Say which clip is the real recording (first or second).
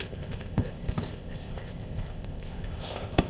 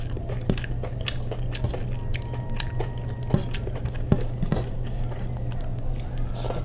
second